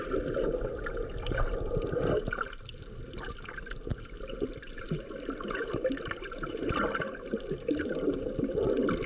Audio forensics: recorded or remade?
recorded